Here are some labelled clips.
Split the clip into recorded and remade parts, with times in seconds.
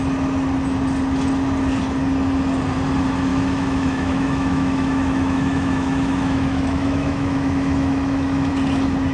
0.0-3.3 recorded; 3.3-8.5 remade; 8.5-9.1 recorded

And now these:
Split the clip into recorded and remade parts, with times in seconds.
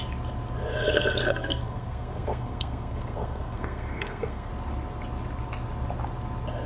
0.0-1.2 recorded; 1.2-4.5 remade; 4.5-6.7 recorded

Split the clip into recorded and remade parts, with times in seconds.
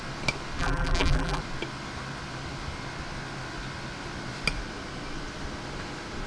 0.0-0.6 recorded; 0.6-1.4 remade; 1.4-6.3 recorded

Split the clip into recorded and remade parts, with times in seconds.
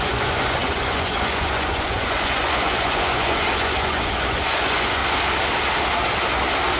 0.0-5.0 remade; 5.0-6.8 recorded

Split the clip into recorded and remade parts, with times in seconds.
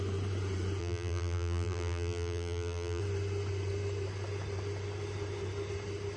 0.0-0.8 recorded; 0.8-3.0 remade; 3.0-6.2 recorded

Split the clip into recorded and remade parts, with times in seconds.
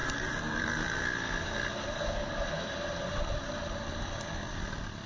0.0-1.0 remade; 1.0-5.1 recorded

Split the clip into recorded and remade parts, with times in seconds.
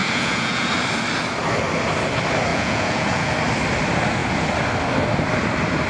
0.0-0.7 remade; 0.7-2.5 recorded; 2.5-3.3 remade; 3.3-5.9 recorded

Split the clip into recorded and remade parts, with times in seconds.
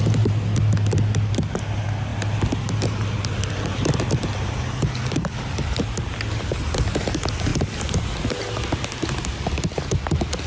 0.0-10.5 recorded